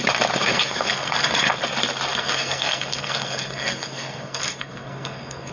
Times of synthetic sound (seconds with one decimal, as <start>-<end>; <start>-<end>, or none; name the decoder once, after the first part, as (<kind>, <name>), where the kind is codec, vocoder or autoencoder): 0.4-1.5 (codec, SNAC); 2.1-5.5